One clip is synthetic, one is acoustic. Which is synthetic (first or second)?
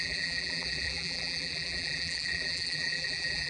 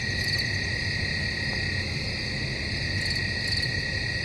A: first